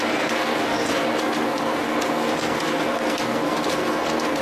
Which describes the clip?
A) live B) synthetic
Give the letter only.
B